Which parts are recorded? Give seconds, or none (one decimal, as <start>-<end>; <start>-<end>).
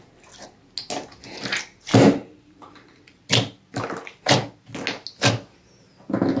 0.0-1.9; 3.3-6.4